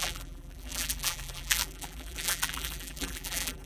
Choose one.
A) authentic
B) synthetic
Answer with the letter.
B